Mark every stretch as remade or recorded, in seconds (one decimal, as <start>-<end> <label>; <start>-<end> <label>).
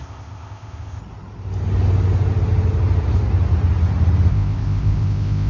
0.0-1.0 remade; 1.0-4.3 recorded; 4.3-5.5 remade